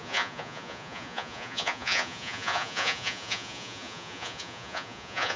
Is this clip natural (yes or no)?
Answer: no